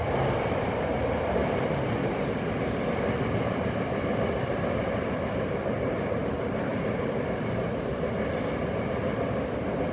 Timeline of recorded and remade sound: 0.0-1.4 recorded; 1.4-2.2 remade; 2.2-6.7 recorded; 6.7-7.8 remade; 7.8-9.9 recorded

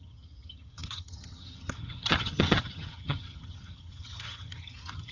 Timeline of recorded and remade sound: 0.0-5.1 remade

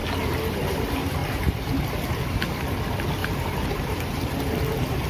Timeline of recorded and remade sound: 0.0-1.2 recorded; 1.2-1.8 remade; 1.8-3.2 recorded; 3.2-4.0 remade; 4.0-5.1 recorded

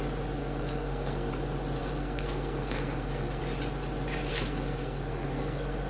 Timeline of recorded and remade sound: 0.0-0.4 recorded; 0.4-1.3 remade; 1.3-1.8 recorded; 1.8-3.4 remade; 3.4-4.3 recorded; 4.3-5.9 remade

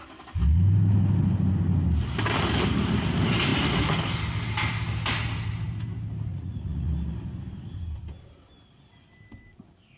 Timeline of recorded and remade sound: 0.0-6.3 recorded; 6.3-6.9 remade; 6.9-10.0 recorded

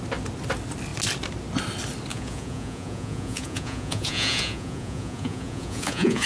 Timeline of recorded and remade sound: 0.0-2.1 recorded; 2.1-6.3 remade

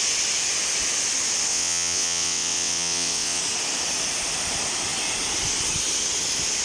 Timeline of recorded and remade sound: 0.0-1.5 recorded; 1.5-3.4 remade; 3.4-6.6 recorded